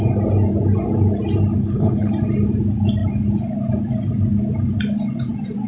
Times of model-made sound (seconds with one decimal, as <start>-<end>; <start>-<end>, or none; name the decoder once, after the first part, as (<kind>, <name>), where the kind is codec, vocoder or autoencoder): 1.6-2.1 (codec, HILCodec)